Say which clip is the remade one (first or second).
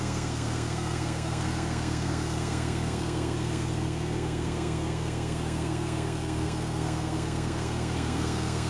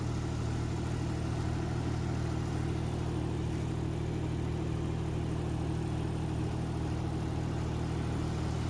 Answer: first